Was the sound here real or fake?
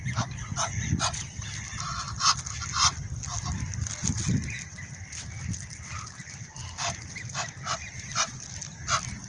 real